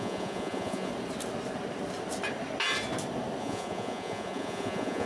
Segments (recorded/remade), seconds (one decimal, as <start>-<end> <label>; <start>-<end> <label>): 0.0-0.9 remade; 0.9-3.4 recorded; 3.4-5.1 remade